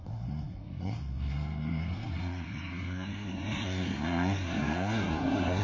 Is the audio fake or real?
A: fake